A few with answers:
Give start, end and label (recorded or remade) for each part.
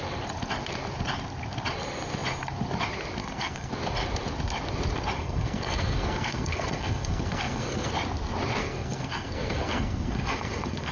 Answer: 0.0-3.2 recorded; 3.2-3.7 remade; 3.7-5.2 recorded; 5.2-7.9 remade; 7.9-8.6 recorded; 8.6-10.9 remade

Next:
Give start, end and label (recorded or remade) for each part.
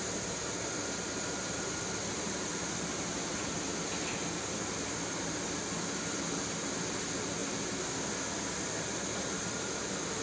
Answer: 0.0-10.2 recorded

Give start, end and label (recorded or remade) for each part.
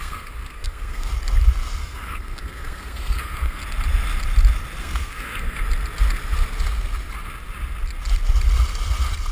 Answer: 0.0-1.1 remade; 1.1-1.8 recorded; 1.8-3.6 remade; 3.6-4.8 recorded; 4.8-5.6 remade; 5.6-9.3 recorded